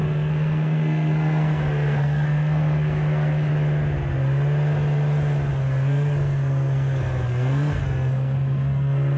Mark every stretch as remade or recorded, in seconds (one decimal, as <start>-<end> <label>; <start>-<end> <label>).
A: 0.0-3.5 remade; 3.5-5.5 recorded; 5.5-9.2 remade